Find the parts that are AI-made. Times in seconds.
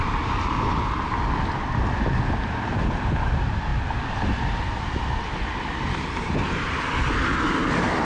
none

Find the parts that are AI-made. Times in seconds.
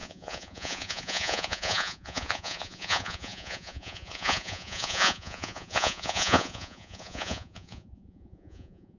0.0-9.0 (vocoder, Vocos)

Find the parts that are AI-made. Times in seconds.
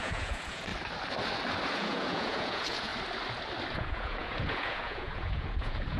0.0-0.7 (vocoder, Vocos); 1.7-2.9; 3.7-6.0